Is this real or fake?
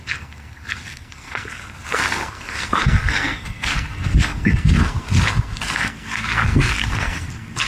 fake